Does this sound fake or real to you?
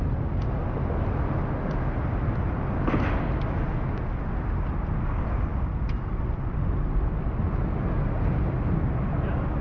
real